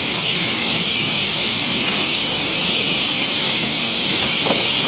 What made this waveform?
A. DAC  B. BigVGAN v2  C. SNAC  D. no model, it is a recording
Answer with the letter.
A